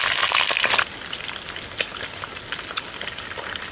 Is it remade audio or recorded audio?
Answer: recorded